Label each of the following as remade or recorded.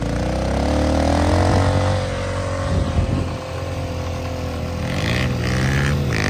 recorded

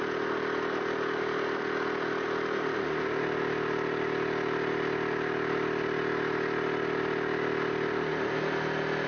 recorded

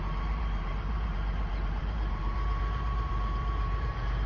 remade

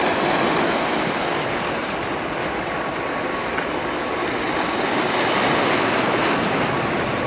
recorded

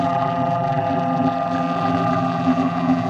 remade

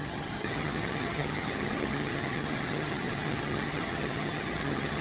remade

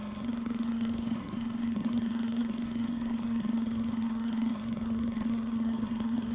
remade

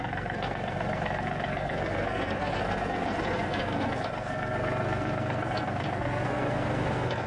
remade